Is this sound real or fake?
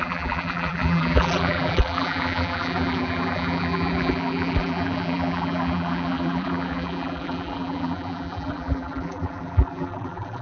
fake